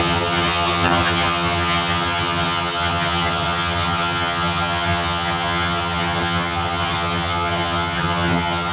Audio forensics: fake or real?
fake